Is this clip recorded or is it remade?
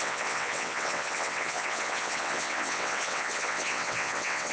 remade